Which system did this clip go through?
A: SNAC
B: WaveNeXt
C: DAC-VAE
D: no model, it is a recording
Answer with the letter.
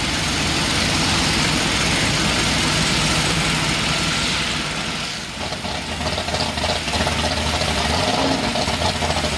D